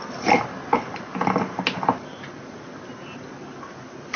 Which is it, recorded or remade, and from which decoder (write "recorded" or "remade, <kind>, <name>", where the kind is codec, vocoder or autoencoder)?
recorded